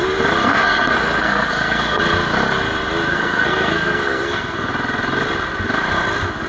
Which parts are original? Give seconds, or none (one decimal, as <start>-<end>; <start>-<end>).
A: 0.0-0.4; 2.0-3.1; 4.7-6.5